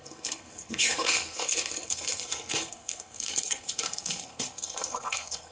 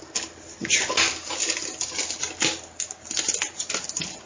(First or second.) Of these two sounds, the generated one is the first